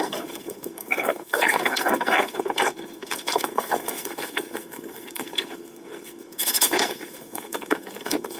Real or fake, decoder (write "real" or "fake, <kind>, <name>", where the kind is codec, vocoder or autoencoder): fake, codec, SNAC